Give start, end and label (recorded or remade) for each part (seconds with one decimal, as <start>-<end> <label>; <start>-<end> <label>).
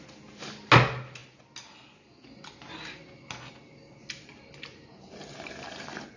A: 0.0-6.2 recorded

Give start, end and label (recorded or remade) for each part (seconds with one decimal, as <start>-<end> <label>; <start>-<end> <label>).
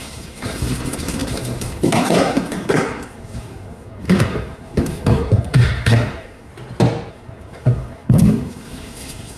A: 0.0-6.5 remade; 6.5-7.1 recorded; 7.1-9.4 remade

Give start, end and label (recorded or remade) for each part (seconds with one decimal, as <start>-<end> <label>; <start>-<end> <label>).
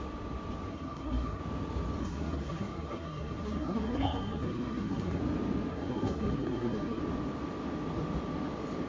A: 0.0-0.7 recorded; 0.7-1.4 remade; 1.4-2.0 recorded; 2.0-5.2 remade; 5.2-5.7 recorded; 5.7-7.0 remade; 7.0-8.9 recorded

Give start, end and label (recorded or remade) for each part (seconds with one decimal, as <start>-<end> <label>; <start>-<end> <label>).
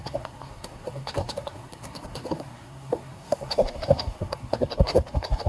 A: 0.0-5.5 remade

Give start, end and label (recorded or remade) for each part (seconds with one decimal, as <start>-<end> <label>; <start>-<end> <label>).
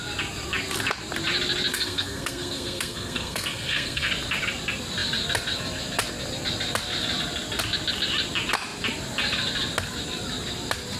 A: 0.0-1.7 recorded; 1.7-4.1 remade; 4.1-11.0 recorded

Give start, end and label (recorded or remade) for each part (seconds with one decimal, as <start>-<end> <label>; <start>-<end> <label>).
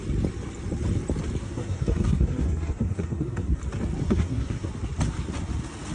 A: 0.0-1.4 recorded; 1.4-3.6 remade; 3.6-4.0 recorded; 4.0-4.7 remade; 4.7-5.9 recorded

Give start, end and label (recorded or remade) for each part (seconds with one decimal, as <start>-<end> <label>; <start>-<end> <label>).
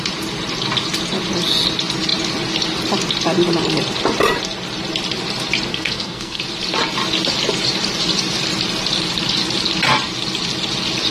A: 0.0-5.7 recorded; 5.7-6.4 remade; 6.4-11.1 recorded